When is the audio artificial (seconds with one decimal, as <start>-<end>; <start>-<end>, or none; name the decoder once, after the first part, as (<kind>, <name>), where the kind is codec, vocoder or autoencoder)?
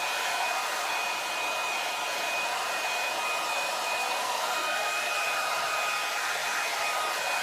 4.0-5.1 (codec, SNAC)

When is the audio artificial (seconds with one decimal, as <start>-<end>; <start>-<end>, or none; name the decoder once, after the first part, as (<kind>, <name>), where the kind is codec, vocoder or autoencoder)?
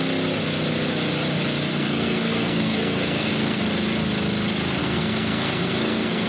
1.7-3.6 (codec, SNAC); 4.8-6.3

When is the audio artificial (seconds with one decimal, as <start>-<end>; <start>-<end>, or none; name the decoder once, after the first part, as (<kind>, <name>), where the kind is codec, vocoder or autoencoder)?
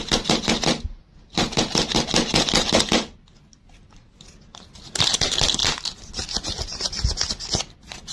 none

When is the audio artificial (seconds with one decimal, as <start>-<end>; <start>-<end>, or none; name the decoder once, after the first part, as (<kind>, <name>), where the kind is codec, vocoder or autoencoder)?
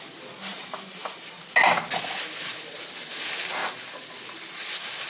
none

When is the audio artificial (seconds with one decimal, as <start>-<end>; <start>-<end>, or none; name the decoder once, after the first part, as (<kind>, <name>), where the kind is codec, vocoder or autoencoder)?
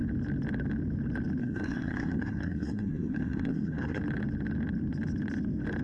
1.4-4.0 (codec, SNAC)